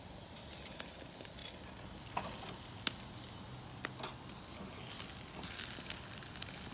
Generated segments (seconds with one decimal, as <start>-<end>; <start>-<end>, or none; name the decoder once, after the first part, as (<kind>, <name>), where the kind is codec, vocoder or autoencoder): none